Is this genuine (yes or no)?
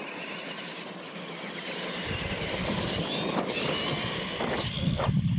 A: yes